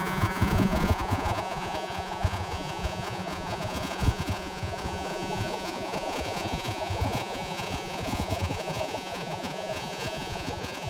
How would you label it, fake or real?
fake